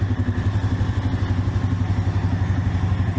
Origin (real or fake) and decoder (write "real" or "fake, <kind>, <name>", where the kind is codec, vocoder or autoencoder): real